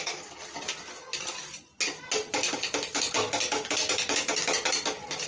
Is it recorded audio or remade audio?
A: recorded